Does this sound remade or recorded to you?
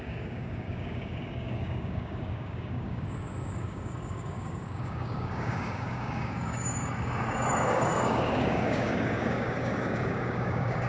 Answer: remade